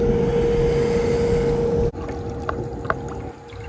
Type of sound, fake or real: real